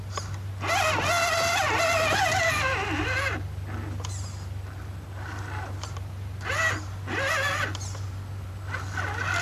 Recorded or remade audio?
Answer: recorded